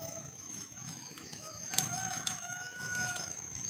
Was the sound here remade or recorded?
remade